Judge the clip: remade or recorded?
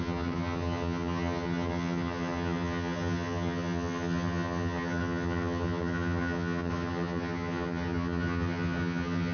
remade